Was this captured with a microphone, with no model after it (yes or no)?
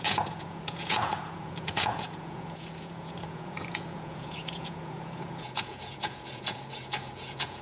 no